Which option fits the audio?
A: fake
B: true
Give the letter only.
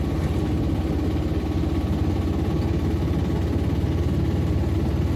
B